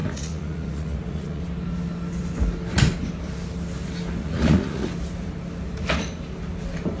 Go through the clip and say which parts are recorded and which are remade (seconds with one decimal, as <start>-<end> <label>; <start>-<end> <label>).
0.0-1.4 remade; 1.4-4.2 recorded; 4.2-4.9 remade; 4.9-7.0 recorded